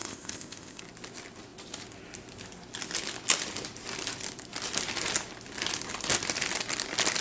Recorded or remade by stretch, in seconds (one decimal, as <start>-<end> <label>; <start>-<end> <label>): 0.0-0.8 remade; 0.8-7.2 recorded